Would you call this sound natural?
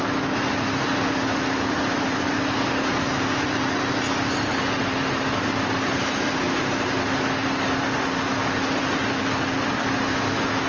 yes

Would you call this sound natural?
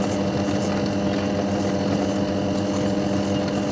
no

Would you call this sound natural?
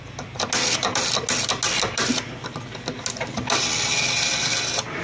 yes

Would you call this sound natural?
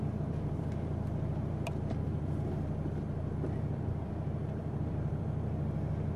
no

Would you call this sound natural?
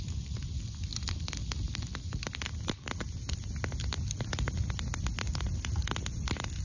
yes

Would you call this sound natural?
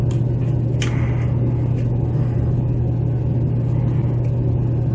yes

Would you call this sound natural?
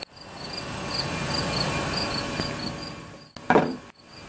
yes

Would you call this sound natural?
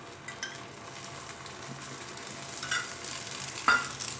yes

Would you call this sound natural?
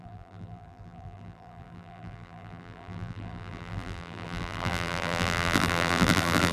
no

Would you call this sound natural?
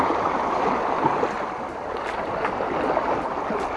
yes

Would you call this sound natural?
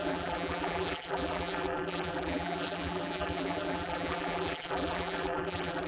no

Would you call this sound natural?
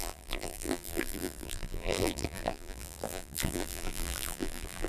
no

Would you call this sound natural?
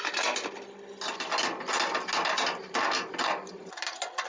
yes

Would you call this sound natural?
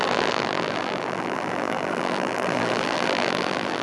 no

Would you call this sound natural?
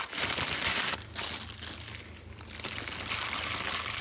yes